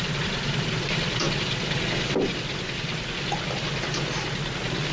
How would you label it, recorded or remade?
recorded